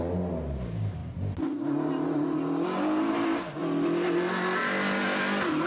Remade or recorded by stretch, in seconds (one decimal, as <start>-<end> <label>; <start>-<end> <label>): 0.0-5.7 recorded